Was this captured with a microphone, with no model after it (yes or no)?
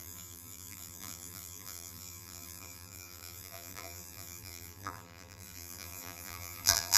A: no